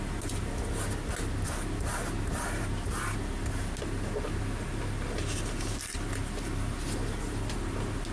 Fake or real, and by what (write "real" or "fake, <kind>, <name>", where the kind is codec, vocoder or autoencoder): real